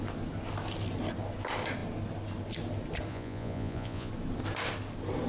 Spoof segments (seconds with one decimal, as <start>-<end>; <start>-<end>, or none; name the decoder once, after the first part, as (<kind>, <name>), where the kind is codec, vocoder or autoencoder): 3.1-4.1 (vocoder, Vocos)

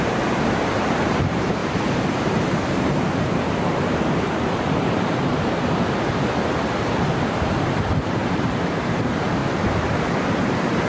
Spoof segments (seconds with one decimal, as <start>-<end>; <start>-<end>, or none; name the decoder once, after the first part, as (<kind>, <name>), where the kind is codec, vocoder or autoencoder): 0.0-10.9 (vocoder, BigVGAN v2)

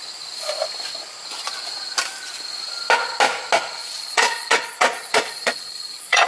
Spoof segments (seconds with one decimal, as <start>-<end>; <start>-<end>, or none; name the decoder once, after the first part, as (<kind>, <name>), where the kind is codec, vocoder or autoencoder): 3.8-6.3 (vocoder, Vocos)